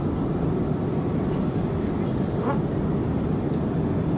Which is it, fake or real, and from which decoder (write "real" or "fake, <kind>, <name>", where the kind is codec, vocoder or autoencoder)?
real